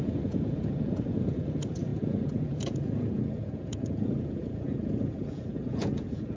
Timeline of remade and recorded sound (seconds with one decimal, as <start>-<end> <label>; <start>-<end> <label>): 0.0-6.4 remade